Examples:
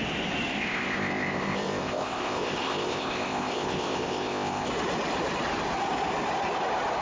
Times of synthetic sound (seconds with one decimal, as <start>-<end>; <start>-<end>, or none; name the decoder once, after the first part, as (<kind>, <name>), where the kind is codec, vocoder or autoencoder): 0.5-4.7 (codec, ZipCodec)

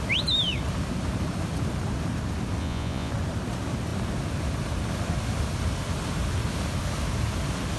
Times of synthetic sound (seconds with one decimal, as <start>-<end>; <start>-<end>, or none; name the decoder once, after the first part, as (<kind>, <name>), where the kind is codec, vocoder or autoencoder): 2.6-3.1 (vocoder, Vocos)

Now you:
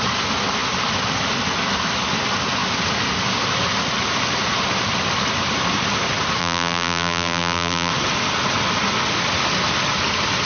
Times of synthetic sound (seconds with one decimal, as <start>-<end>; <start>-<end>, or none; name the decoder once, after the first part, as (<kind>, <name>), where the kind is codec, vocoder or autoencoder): 6.4-7.9 (vocoder, BigVGAN v2)

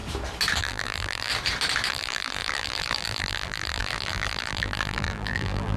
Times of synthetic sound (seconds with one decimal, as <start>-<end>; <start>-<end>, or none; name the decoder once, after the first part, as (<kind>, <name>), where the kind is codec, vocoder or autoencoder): 0.6-1.3 (vocoder, BigVGAN v2); 1.9-5.8